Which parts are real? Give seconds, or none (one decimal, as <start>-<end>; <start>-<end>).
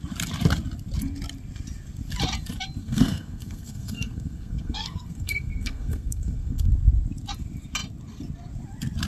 0.0-2.8; 6.7-9.1